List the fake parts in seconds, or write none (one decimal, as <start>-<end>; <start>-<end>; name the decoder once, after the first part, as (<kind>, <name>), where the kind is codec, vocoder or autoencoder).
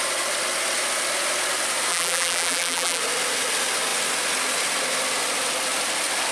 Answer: 1.9-3.0 (vocoder, BigVGAN v2)